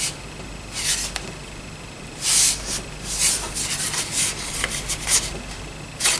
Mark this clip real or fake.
real